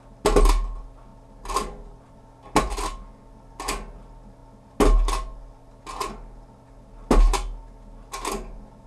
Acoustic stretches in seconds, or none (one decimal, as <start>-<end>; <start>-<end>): 0.0-8.9

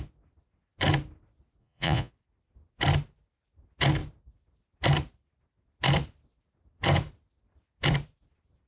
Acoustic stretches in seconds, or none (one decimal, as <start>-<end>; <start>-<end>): 0.0-1.6; 2.1-8.7